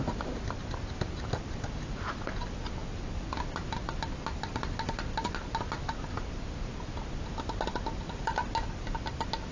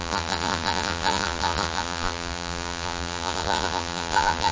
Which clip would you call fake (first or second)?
second